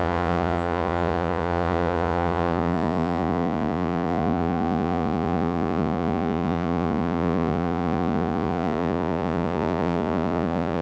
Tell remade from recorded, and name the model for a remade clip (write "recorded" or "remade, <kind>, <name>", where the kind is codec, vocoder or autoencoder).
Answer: remade, vocoder, Vocos